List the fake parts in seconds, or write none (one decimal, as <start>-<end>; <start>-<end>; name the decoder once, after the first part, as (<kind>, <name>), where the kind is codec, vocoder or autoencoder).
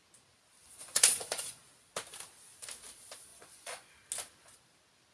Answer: 0.6-1.6 (vocoder, Vocos); 3.3-3.9